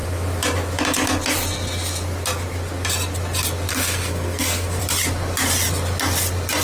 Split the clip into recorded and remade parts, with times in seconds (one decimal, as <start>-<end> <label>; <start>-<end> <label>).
0.0-3.7 recorded; 3.7-4.8 remade; 4.8-6.6 recorded